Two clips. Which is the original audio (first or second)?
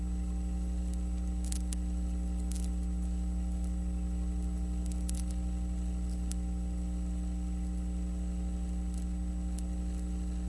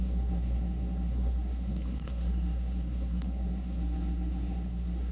first